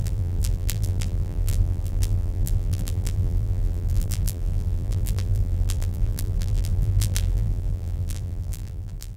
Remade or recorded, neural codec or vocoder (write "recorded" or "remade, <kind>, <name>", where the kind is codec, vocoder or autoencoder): remade, vocoder, BigVGAN v2